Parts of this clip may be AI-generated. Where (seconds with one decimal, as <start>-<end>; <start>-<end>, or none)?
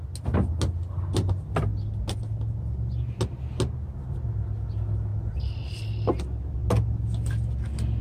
none